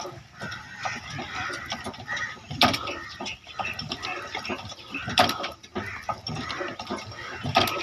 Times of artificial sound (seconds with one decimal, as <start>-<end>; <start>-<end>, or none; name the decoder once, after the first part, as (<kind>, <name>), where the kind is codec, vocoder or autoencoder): 0.0-5.7 (vocoder, BigVGAN v2)